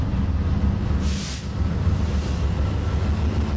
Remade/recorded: recorded